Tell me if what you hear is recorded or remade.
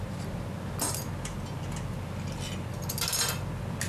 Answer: recorded